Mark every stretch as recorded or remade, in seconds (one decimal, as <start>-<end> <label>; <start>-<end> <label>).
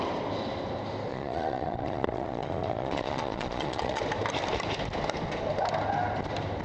0.0-1.1 recorded; 1.1-4.0 remade; 4.0-6.6 recorded